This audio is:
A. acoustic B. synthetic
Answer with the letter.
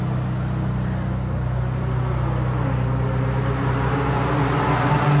A